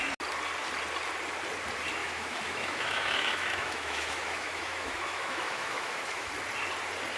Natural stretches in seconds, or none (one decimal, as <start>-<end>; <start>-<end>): 0.0-2.0; 6.3-7.2